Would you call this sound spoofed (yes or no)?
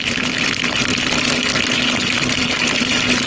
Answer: no